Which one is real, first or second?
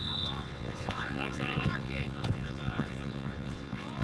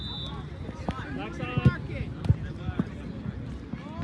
second